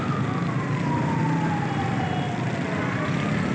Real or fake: real